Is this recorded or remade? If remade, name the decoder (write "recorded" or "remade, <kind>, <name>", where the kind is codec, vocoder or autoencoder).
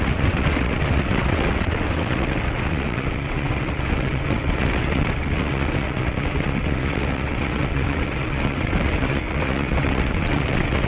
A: remade, vocoder, WaveNeXt